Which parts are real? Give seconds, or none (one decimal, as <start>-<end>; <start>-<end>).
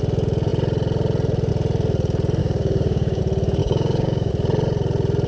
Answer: 0.0-2.4; 3.2-3.6; 4.3-5.3